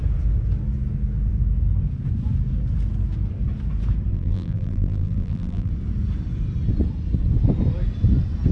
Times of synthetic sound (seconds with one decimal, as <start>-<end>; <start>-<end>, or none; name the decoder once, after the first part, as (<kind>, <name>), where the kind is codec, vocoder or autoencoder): 4.1-5.7 (vocoder, BigVGAN v2)